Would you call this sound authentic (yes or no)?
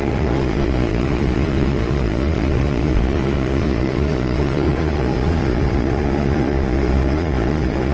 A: no